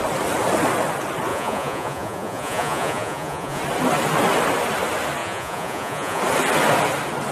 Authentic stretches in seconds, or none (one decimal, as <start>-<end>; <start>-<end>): 0.0-1.3; 3.6-5.2; 6.2-7.3